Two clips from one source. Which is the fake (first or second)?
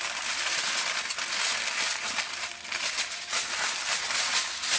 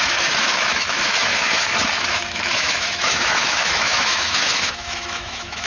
second